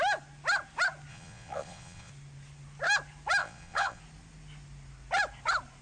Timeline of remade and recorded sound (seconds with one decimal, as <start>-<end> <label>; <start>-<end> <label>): 0.0-1.1 recorded; 1.1-2.1 remade; 2.1-3.4 recorded; 3.4-4.0 remade; 4.0-5.8 recorded